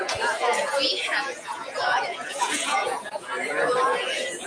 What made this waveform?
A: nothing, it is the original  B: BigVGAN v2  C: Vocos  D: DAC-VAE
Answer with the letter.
C